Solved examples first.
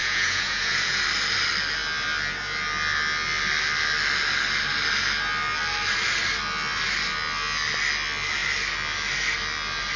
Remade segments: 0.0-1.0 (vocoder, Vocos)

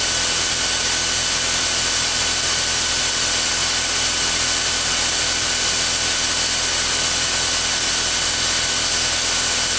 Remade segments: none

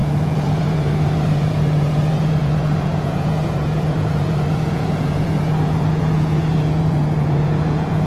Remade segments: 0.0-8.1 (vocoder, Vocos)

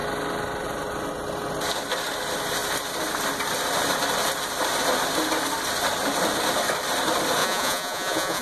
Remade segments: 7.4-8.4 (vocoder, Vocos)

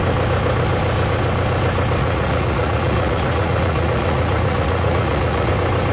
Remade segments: 2.0-5.5 (vocoder, Vocos)